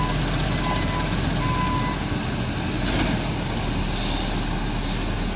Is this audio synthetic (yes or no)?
no